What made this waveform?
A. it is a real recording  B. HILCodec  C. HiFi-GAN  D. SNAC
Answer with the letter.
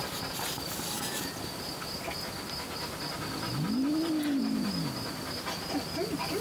A